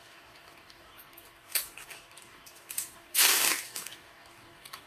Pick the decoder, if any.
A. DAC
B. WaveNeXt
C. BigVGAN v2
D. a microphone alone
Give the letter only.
A